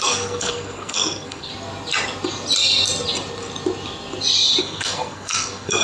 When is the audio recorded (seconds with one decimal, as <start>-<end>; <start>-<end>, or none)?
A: 1.5-4.6